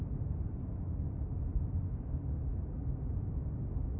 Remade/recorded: recorded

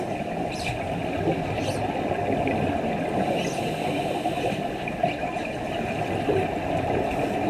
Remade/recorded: recorded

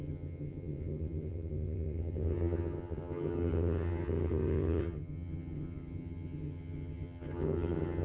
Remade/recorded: remade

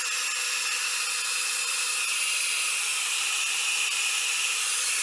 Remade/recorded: recorded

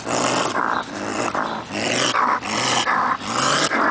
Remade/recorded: recorded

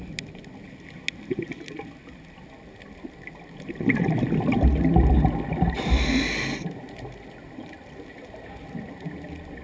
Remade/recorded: recorded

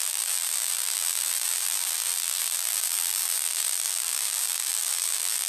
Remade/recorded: remade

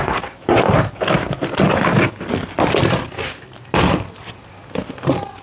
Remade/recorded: recorded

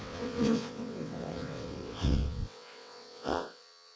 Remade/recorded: remade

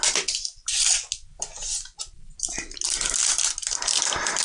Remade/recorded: recorded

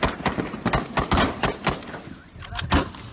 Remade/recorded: recorded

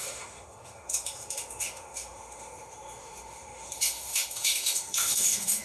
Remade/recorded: remade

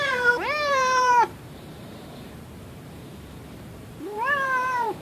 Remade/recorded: remade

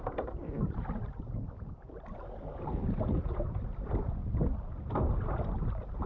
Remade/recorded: recorded